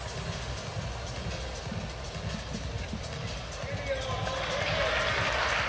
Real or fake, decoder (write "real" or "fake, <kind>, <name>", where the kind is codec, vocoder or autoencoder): real